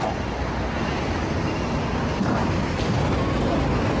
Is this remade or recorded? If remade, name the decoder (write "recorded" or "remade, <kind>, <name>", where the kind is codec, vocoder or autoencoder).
recorded